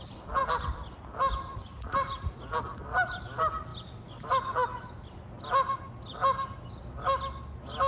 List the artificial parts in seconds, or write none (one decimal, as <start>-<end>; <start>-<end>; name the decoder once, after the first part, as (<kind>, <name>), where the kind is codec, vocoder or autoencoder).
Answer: none